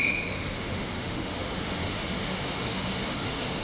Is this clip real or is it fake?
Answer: fake